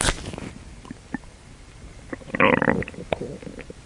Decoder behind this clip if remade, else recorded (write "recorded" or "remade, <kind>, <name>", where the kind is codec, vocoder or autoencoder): recorded